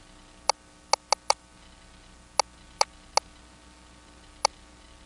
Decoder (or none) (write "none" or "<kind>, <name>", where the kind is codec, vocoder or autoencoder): none